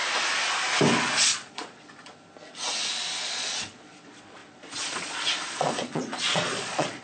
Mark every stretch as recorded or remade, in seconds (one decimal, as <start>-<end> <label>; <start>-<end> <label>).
0.0-1.0 recorded; 1.0-2.1 remade; 2.1-3.2 recorded; 3.2-7.0 remade